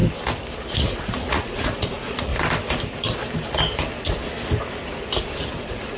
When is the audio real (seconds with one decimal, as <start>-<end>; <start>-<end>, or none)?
0.0-0.7; 2.3-5.6